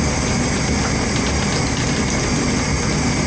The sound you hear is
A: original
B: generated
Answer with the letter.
A